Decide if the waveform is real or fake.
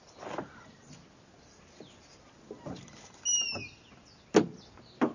real